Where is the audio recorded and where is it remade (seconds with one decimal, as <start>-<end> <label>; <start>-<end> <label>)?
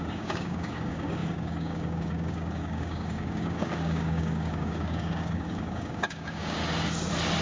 0.0-6.6 remade; 6.6-7.4 recorded